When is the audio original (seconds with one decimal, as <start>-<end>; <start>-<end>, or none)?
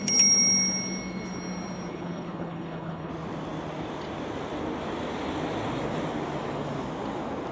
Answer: 0.0-1.9; 3.1-7.5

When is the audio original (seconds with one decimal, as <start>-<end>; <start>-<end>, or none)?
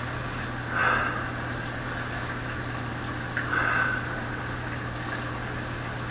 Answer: 0.0-6.1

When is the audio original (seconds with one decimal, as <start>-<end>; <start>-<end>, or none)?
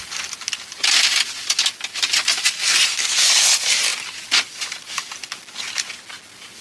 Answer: 0.0-2.9; 3.5-6.6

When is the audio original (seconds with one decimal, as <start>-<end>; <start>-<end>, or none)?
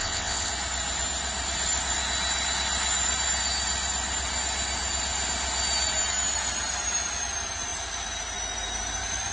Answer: 0.5-9.3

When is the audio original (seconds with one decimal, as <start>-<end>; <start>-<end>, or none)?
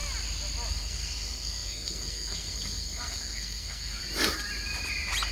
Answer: 0.0-0.7; 4.0-5.3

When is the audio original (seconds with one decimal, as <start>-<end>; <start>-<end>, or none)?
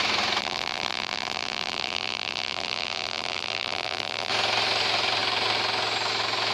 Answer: 0.0-0.4; 4.3-6.5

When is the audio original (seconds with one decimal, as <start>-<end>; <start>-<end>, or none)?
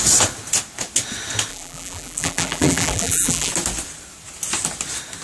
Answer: 0.0-1.5; 3.5-5.2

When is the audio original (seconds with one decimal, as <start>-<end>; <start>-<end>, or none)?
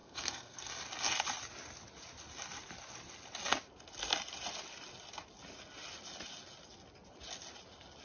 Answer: 0.7-8.0